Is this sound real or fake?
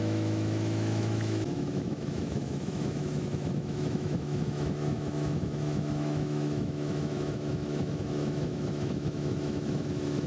fake